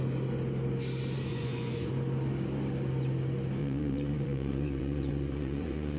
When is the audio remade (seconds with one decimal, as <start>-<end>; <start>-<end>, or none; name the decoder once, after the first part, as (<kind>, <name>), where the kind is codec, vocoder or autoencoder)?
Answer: 1.3-1.9 (vocoder, Vocos); 3.6-6.0